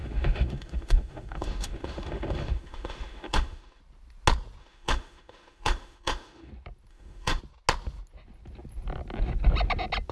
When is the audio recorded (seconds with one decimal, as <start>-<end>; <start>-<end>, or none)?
3.8-4.6; 6.5-6.9; 7.4-10.1

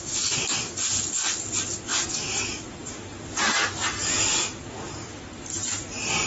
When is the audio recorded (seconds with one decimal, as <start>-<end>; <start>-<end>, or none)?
0.0-6.3

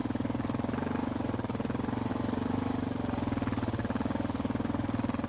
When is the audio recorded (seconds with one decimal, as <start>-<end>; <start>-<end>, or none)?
0.0-5.3

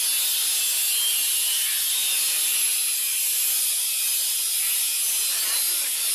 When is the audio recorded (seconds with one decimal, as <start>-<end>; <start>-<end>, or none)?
0.0-6.1

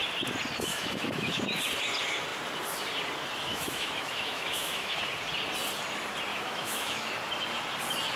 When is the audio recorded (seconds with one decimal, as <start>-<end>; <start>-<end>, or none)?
0.0-0.7; 1.4-3.5; 5.0-6.3; 7.1-8.2

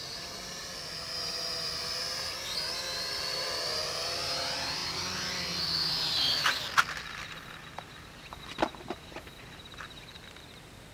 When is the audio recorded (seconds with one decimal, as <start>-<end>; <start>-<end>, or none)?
0.0-10.9

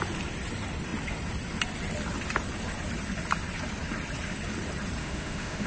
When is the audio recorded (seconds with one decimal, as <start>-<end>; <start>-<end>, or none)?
0.0-5.0